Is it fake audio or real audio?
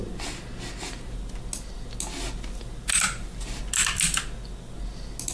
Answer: real